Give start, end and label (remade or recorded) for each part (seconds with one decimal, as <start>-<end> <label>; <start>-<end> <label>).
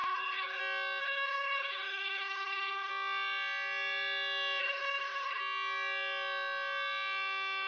0.0-0.6 remade; 0.6-1.0 recorded; 1.0-2.9 remade; 2.9-4.6 recorded; 4.6-5.4 remade; 5.4-7.7 recorded